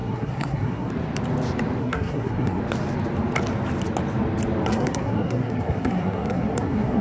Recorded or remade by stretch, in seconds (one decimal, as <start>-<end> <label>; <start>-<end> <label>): 0.0-0.9 remade; 0.9-1.8 recorded; 1.8-2.6 remade; 2.6-4.7 recorded; 4.7-7.0 remade